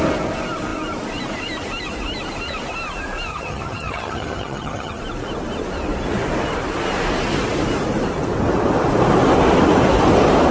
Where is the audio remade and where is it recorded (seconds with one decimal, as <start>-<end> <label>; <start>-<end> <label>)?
0.0-3.3 recorded; 3.3-5.0 remade; 5.0-10.5 recorded